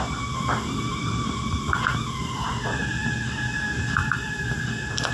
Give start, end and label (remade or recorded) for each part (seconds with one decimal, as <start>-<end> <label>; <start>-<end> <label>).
0.0-0.9 recorded; 0.9-2.5 remade; 2.5-3.0 recorded; 3.0-3.5 remade; 3.5-4.0 recorded; 4.0-5.1 remade